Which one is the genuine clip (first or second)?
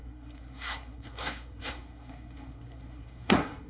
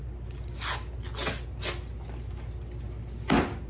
second